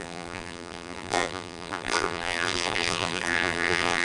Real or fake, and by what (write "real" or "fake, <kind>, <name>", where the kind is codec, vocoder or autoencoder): fake, vocoder, BigVGAN v2